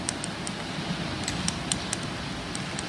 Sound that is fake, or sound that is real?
real